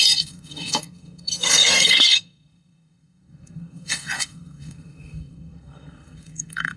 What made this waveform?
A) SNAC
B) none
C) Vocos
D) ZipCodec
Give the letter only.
A